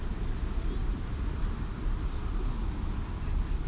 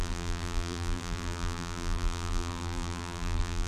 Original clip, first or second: first